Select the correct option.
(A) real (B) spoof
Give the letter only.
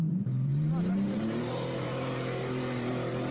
B